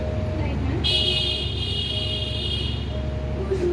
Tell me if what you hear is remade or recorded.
recorded